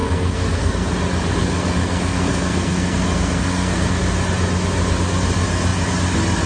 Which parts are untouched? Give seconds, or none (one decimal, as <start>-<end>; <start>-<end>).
0.9-1.4; 4.0-6.5